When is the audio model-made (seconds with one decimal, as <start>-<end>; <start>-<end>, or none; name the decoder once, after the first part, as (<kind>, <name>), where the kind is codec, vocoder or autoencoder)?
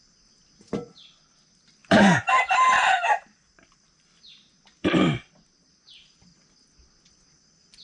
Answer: 1.8-6.5 (vocoder, BigVGAN v2)